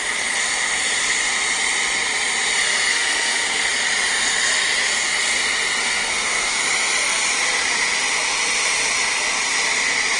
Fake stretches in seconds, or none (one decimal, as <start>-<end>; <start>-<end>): 2.9-3.7; 5.8-6.6